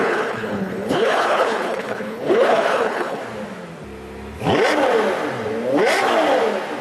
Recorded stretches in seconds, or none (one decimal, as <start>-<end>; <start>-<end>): 3.2-6.8